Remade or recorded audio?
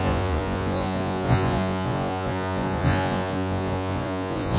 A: remade